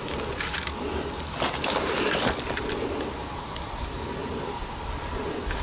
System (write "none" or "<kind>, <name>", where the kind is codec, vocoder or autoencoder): none